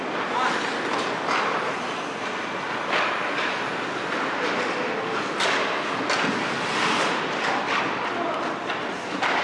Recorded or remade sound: recorded